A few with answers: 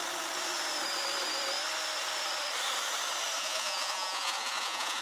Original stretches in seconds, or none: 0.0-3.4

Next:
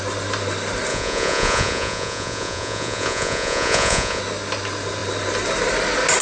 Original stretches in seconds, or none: 0.0-0.9; 4.2-6.2

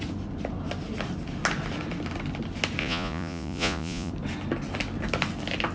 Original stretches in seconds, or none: 0.0-2.8; 4.1-5.7

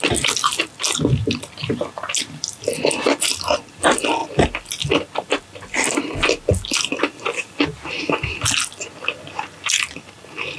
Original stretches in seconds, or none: 0.0-10.6

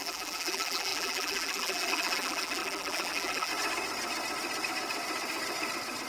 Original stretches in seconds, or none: 3.5-6.1

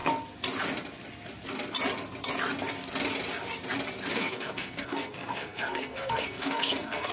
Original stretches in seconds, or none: 0.0-4.1

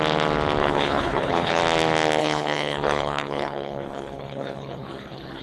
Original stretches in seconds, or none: 0.0-0.6; 1.6-2.2

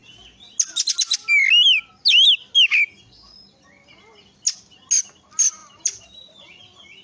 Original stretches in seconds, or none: 0.0-5.6; 6.6-7.0